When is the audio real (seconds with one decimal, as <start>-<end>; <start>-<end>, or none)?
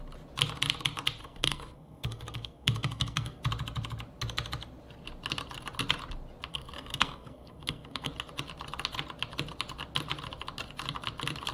0.0-1.2; 3.4-6.5; 8.1-11.5